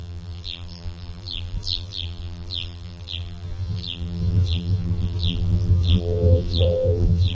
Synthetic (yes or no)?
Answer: yes